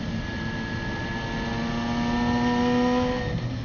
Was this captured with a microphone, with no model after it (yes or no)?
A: yes